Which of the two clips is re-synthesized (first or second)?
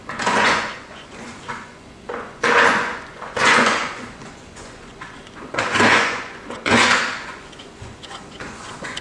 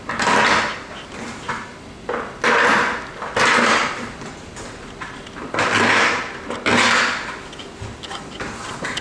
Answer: first